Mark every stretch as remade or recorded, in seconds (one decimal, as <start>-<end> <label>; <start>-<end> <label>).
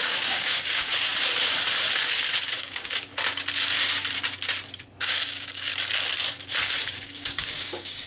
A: 0.0-0.9 remade; 0.9-2.6 recorded; 2.6-3.1 remade; 3.1-5.0 recorded; 5.0-5.7 remade; 5.7-6.8 recorded; 6.8-8.1 remade